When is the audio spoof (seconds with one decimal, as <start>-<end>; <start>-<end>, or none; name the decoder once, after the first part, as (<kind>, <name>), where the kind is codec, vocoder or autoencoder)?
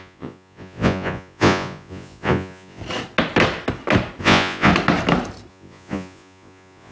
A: 0.0-2.8 (vocoder, Vocos); 4.2-4.7; 5.5-6.9